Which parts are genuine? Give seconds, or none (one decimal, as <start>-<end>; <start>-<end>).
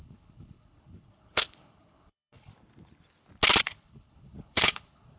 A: 2.5-3.6